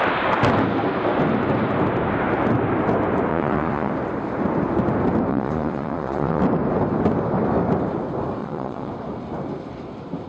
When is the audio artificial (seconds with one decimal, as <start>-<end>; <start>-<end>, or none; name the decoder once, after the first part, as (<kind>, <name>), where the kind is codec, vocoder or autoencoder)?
3.3-3.9 (vocoder, Vocos); 5.3-6.4; 8.4-8.9